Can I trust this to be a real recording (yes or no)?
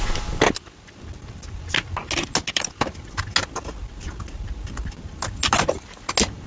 yes